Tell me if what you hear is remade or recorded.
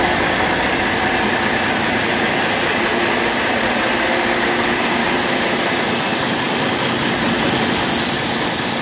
recorded